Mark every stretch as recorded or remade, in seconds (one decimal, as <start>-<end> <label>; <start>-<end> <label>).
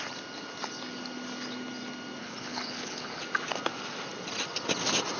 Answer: 0.0-2.2 recorded; 2.2-3.2 remade; 3.2-5.2 recorded